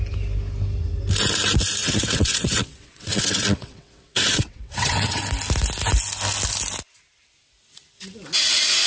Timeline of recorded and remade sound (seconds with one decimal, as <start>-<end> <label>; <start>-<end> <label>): 0.0-1.8 recorded; 1.8-5.2 remade; 5.2-8.9 recorded